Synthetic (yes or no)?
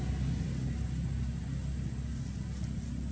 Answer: no